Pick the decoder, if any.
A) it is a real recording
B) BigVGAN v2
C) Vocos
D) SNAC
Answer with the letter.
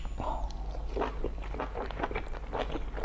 A